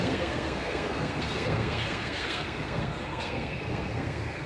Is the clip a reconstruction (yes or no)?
yes